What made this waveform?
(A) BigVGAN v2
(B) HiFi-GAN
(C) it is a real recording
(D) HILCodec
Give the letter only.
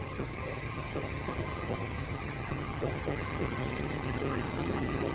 B